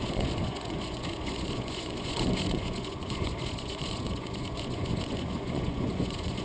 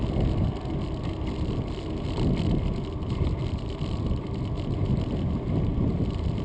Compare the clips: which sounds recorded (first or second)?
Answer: second